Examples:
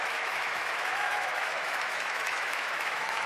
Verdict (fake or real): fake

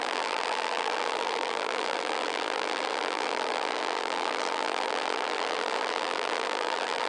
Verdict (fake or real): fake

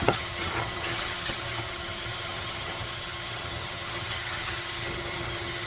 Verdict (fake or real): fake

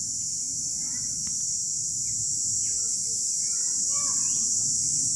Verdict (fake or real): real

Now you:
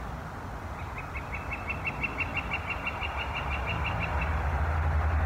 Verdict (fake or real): real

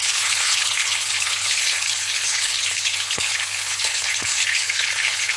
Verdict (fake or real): fake